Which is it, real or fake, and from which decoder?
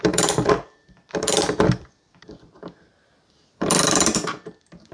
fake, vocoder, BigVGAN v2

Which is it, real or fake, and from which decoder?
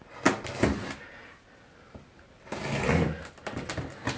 real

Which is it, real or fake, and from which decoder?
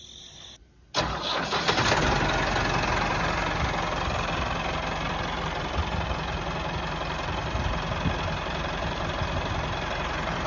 real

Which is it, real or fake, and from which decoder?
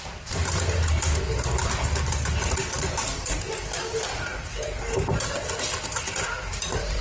fake, vocoder, BigVGAN v2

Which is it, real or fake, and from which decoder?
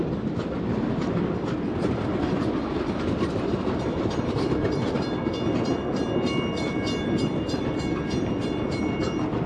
real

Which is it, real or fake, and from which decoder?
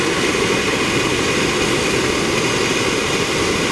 real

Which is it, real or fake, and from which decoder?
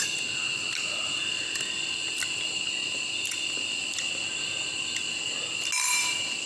real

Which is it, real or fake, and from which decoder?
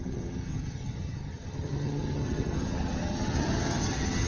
fake, vocoder, HiFi-GAN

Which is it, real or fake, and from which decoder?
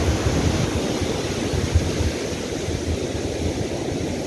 real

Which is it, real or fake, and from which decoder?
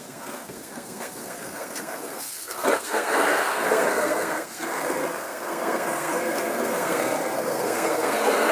fake, codec, SNAC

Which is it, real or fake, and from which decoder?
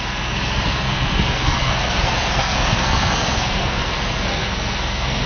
fake, codec, SNAC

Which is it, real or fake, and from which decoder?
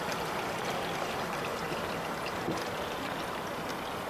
real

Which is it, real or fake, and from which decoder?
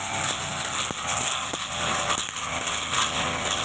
real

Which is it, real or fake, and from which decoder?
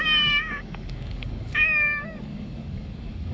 fake, codec, DAC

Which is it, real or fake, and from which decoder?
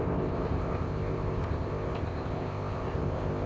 fake, codec, ZipCodec